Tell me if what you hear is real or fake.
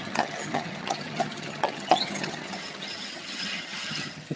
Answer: fake